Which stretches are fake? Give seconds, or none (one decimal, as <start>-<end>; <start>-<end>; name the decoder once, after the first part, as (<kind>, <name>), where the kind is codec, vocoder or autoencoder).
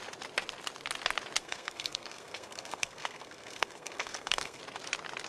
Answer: 1.4-4.6 (codec, SNAC)